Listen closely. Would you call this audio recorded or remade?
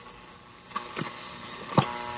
recorded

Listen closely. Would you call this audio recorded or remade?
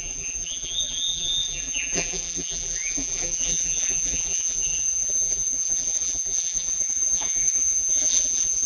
remade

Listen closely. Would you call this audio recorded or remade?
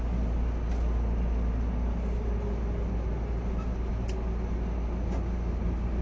recorded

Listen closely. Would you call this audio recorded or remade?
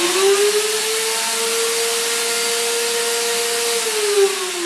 recorded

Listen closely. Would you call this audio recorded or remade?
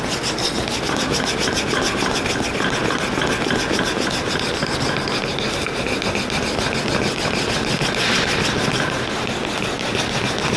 recorded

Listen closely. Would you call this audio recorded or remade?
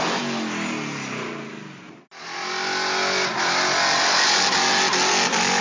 recorded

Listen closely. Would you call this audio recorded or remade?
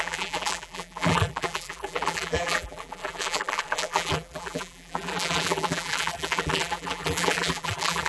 remade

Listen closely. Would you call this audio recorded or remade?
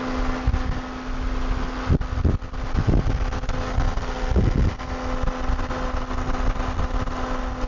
recorded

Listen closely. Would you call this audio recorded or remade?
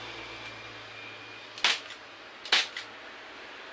recorded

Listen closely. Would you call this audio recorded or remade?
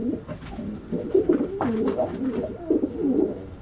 recorded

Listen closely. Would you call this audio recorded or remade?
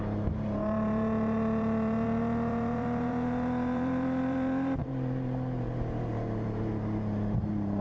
remade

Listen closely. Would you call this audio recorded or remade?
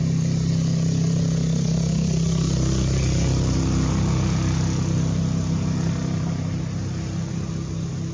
recorded